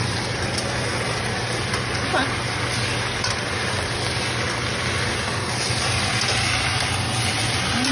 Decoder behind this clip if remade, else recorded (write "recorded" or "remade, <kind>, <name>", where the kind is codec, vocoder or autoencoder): recorded